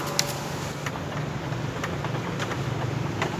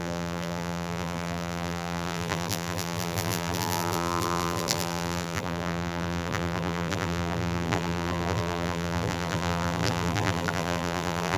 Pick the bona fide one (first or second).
first